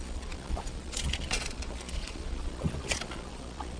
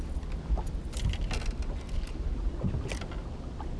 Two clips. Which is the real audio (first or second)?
second